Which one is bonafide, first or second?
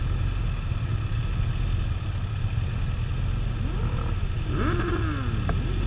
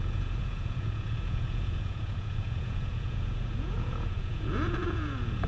first